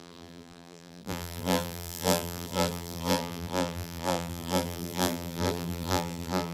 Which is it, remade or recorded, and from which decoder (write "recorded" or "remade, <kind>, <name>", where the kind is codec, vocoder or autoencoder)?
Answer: remade, vocoder, BigVGAN v2